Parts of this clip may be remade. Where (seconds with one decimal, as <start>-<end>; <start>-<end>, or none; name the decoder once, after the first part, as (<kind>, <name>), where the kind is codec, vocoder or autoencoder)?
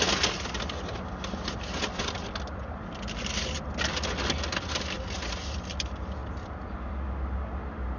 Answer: none